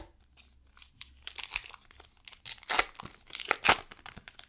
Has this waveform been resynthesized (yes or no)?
no